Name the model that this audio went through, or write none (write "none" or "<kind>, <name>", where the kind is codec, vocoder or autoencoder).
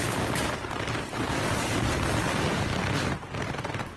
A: none